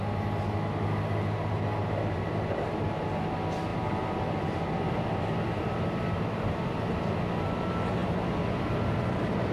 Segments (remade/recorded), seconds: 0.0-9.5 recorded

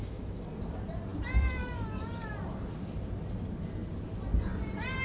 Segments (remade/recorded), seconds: 0.0-0.5 remade; 0.5-5.0 recorded

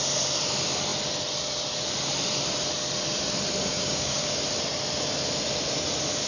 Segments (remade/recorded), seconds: 0.0-3.6 recorded; 3.6-4.4 remade; 4.4-6.3 recorded